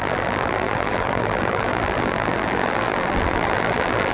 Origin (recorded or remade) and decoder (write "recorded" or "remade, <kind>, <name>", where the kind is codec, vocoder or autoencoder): remade, vocoder, BigVGAN v2